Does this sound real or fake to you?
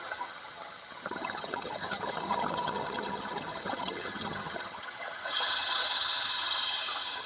fake